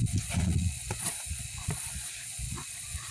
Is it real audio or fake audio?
fake